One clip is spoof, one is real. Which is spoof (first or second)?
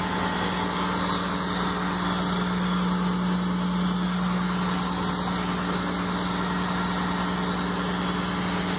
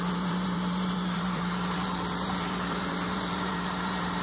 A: second